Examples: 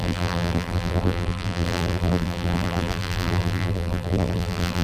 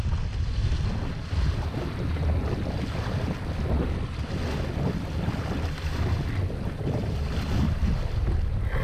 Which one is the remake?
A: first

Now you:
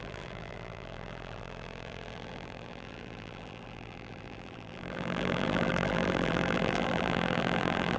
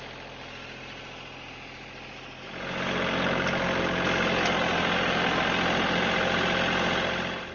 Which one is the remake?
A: first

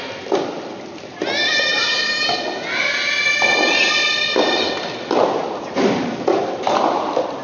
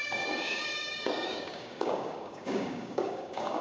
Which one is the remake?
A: second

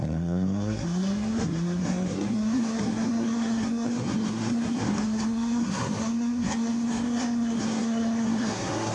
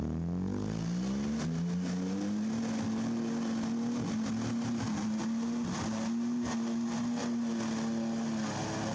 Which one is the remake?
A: first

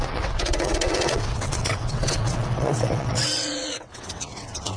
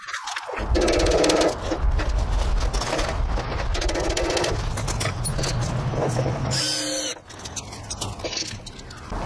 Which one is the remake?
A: first